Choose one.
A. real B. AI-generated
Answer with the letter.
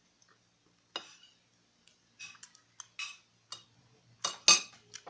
A